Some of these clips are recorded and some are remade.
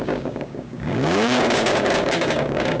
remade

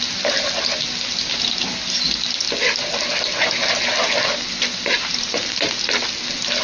recorded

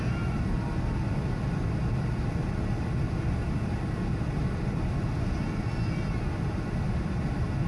recorded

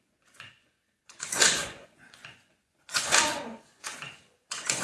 remade